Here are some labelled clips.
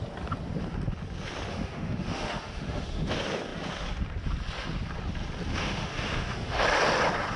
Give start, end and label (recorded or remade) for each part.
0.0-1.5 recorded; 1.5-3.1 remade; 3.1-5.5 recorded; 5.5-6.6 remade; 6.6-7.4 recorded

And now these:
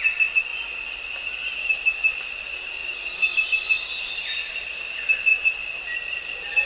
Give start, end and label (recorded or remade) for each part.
0.0-6.7 recorded

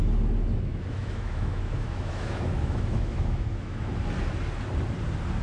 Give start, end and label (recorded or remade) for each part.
0.0-0.7 recorded; 0.7-3.9 remade; 3.9-5.4 recorded